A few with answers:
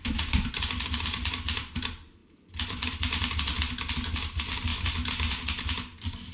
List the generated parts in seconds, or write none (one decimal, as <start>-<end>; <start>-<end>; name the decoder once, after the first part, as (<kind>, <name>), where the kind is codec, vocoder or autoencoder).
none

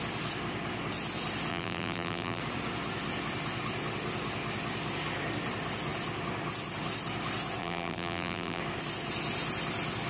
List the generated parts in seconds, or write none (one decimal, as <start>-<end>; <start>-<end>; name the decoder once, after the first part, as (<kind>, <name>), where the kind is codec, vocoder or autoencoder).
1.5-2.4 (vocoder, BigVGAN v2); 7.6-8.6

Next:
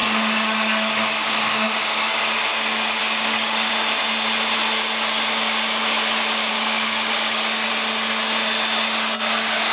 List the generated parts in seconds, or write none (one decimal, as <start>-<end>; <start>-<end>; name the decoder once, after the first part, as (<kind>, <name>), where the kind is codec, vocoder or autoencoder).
0.0-2.2 (codec, DAC); 3.0-3.7; 6.5-7.7